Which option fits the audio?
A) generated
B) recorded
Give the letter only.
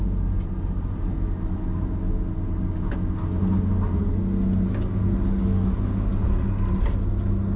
B